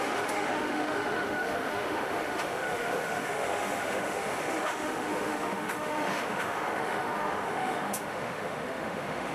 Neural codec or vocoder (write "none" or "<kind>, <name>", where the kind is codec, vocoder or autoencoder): autoencoder, DAC-VAE